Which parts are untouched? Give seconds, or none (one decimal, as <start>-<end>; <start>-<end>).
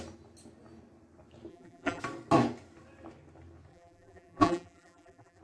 0.0-1.5; 2.0-3.7